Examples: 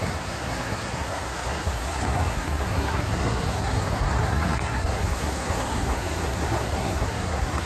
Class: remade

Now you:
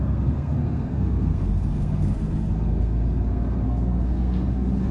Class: remade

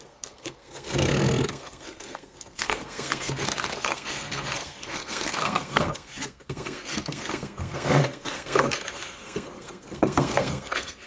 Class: remade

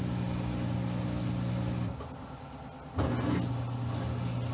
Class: recorded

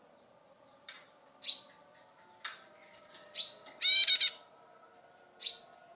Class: recorded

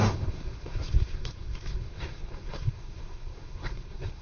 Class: remade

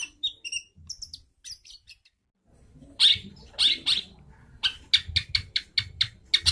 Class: recorded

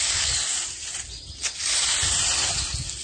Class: recorded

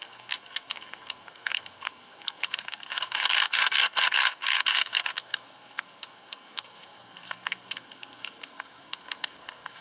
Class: remade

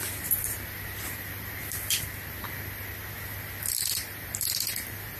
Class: recorded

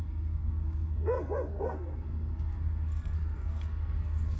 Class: remade